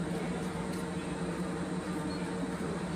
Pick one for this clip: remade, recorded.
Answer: recorded